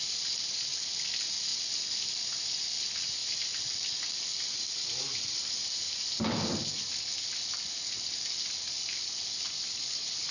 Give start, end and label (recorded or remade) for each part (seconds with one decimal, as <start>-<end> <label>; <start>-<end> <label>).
0.0-10.3 recorded